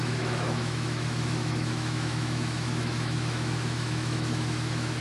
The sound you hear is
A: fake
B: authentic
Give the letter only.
A